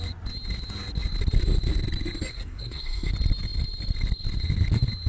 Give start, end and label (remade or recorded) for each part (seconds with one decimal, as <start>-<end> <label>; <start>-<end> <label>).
0.0-2.3 recorded; 2.3-3.1 remade; 3.1-5.1 recorded

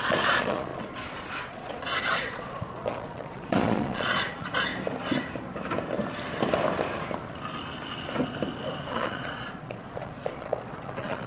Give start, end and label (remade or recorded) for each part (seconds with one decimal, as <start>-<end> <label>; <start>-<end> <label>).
0.0-4.7 remade; 4.7-8.9 recorded; 8.9-11.3 remade

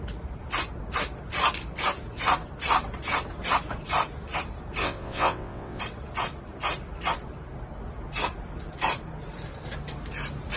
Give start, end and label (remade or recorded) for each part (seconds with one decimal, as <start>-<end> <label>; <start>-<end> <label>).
0.0-4.8 recorded; 4.8-5.8 remade; 5.8-10.6 recorded

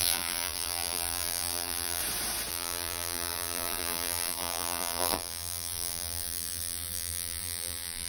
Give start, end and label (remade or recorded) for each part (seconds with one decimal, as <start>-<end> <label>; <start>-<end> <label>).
0.0-2.0 remade; 2.0-2.5 recorded; 2.5-8.1 remade

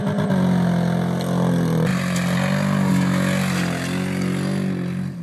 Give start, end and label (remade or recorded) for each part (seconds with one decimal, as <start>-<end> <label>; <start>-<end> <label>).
0.0-5.2 recorded

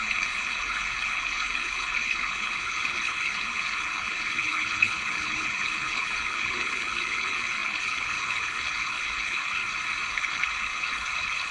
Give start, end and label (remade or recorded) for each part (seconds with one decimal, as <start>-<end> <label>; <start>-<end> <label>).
0.0-9.6 remade; 9.6-10.1 recorded; 10.1-11.5 remade

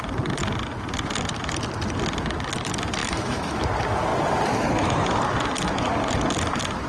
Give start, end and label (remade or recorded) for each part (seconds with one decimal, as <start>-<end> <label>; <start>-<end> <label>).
0.0-3.0 recorded; 3.0-3.6 remade; 3.6-6.9 recorded

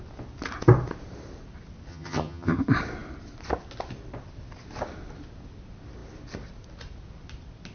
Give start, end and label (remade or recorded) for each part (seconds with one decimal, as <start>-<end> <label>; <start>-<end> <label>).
0.0-1.9 recorded; 1.9-2.6 remade; 2.6-7.7 recorded